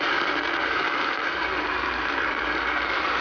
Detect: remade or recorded remade